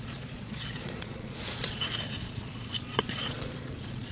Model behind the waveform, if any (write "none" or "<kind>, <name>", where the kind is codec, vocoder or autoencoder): vocoder, Vocos